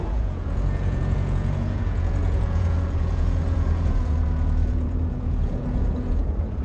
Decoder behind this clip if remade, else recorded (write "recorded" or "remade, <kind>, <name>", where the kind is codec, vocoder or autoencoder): remade, vocoder, Vocos